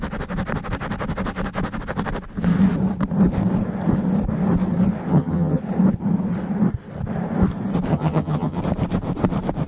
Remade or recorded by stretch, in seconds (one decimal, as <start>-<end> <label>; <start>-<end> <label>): 0.0-5.1 recorded; 5.1-5.6 remade; 5.6-7.9 recorded; 7.9-8.6 remade; 8.6-9.7 recorded